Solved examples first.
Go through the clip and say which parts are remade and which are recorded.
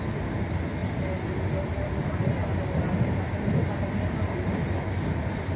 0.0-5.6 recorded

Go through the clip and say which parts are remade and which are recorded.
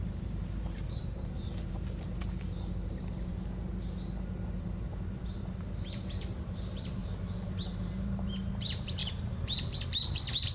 0.0-3.7 remade; 3.7-4.5 recorded; 4.5-7.0 remade; 7.0-7.6 recorded; 7.6-10.5 remade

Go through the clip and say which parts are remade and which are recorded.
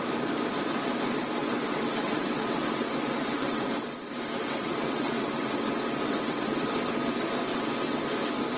0.0-1.4 recorded; 1.4-3.9 remade; 3.9-4.4 recorded; 4.4-6.7 remade; 6.7-7.5 recorded; 7.5-8.0 remade; 8.0-8.6 recorded